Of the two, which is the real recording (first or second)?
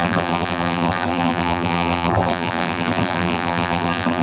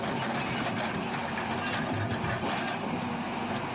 second